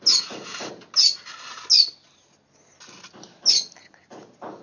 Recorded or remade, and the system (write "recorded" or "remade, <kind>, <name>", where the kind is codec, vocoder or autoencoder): recorded